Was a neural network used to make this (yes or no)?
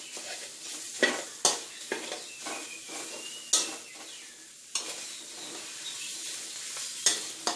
no